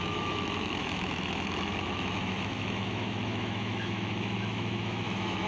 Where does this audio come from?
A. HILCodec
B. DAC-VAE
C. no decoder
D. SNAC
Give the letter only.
B